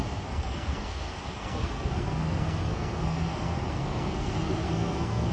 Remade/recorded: remade